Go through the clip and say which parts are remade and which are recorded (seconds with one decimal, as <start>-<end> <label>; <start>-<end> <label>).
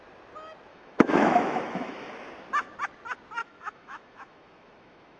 0.0-0.7 recorded; 0.7-2.1 remade; 2.1-3.4 recorded; 3.4-5.2 remade